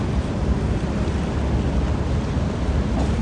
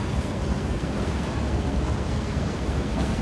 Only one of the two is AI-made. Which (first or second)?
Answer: second